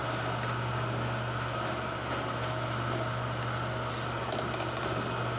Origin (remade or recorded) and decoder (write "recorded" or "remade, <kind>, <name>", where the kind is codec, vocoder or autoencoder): recorded